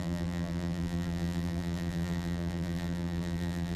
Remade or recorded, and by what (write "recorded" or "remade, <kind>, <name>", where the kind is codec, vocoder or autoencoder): remade, vocoder, BigVGAN v2